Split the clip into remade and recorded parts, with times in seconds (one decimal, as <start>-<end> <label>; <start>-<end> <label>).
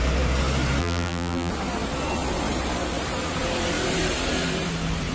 0.0-0.8 recorded; 0.8-1.5 remade; 1.5-5.1 recorded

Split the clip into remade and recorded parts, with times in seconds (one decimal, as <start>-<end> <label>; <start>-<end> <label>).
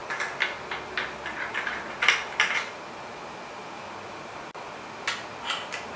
0.0-6.0 recorded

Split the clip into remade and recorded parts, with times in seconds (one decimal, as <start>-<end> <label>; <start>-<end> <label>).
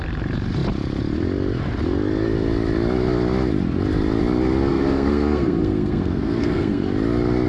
0.0-4.7 recorded; 4.7-6.8 remade; 6.8-7.5 recorded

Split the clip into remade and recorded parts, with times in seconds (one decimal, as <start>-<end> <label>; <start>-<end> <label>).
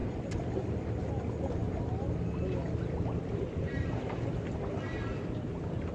0.0-5.9 recorded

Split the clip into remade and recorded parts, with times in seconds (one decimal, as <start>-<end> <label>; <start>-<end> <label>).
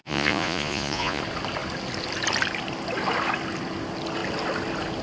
0.0-1.2 remade; 1.2-5.0 recorded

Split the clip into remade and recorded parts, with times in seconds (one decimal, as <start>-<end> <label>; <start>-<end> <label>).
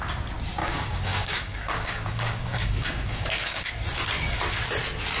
0.0-0.6 recorded; 0.6-3.7 remade; 3.7-5.2 recorded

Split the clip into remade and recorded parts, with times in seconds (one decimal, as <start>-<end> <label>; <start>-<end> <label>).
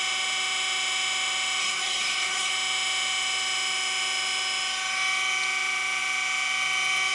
0.0-1.6 recorded; 1.6-2.5 remade; 2.5-7.1 recorded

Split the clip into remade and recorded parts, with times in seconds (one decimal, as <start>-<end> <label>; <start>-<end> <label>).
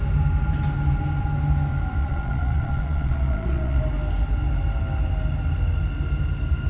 0.0-2.0 recorded; 2.0-3.8 remade; 3.8-6.7 recorded